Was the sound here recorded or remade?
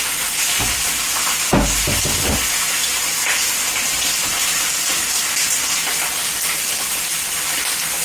recorded